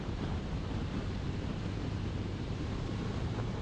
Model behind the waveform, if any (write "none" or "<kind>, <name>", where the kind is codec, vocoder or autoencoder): vocoder, BigVGAN v2